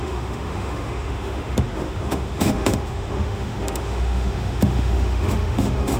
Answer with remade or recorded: remade